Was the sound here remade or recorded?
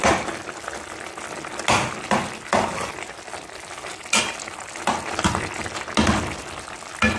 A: recorded